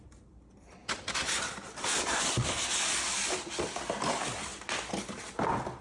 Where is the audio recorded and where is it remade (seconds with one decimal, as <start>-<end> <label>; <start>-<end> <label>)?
0.0-4.5 remade; 4.5-5.2 recorded; 5.2-5.8 remade